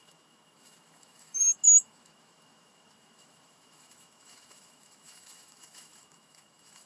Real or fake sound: fake